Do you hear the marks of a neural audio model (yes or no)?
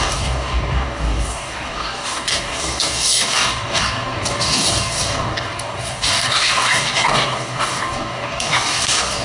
yes